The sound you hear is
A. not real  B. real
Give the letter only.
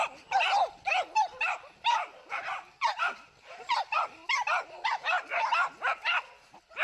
B